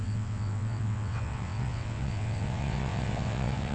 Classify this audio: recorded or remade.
remade